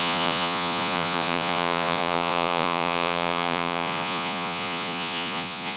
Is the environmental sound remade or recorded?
remade